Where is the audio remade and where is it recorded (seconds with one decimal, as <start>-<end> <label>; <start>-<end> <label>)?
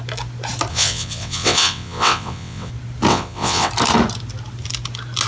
0.0-0.7 recorded; 0.7-2.7 remade; 2.7-3.1 recorded; 3.1-3.7 remade; 3.7-5.3 recorded